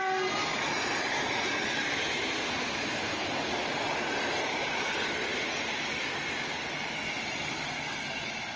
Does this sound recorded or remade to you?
recorded